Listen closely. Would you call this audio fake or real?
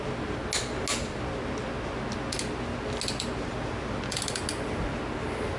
real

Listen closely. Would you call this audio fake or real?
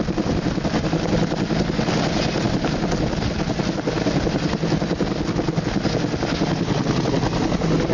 real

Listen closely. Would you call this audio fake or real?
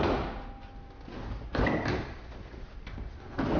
real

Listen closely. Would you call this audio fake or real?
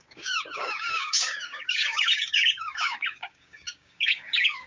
fake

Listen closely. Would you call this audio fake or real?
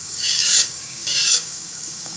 fake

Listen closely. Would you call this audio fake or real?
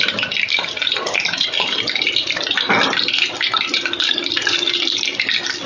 fake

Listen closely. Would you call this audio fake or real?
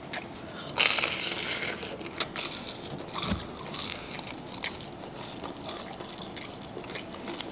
real